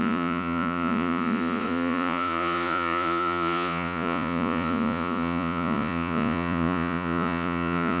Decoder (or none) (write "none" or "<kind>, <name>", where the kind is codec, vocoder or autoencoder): vocoder, Vocos